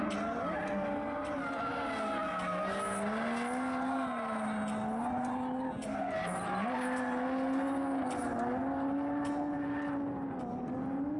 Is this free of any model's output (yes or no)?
yes